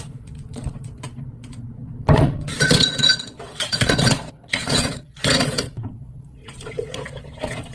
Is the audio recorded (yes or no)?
no